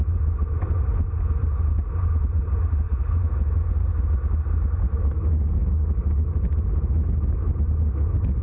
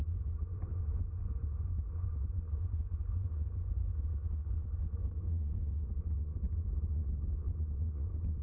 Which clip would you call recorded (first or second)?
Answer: first